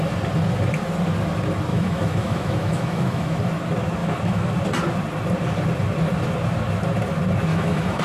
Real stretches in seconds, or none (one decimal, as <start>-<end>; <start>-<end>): 0.0-1.7; 3.4-4.0; 4.6-7.5